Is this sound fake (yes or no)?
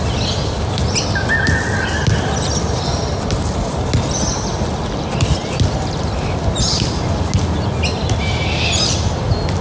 no